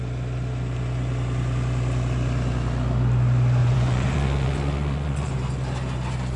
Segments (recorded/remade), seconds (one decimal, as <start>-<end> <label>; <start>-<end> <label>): 0.0-3.6 recorded; 3.6-5.3 remade; 5.3-6.4 recorded